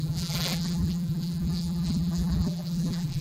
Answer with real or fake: fake